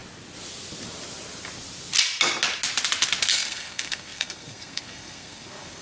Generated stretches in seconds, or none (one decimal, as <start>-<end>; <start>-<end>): 3.3-5.8